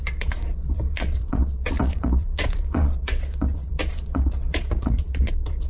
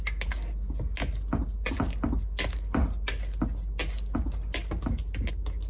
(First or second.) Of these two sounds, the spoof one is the first